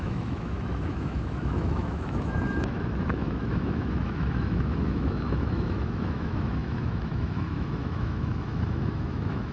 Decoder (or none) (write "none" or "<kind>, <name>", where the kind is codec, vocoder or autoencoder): autoencoder, DAC-VAE